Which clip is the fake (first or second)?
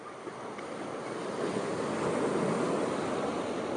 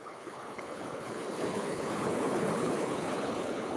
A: second